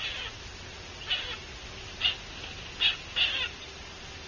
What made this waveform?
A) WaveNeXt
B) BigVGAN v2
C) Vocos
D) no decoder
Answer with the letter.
D